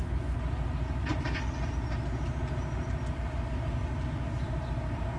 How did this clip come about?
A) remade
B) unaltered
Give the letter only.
B